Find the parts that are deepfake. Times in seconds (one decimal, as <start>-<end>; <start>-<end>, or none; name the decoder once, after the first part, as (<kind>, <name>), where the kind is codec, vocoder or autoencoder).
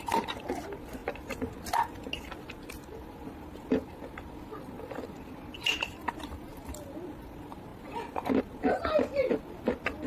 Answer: none